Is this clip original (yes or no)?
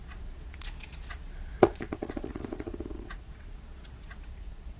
no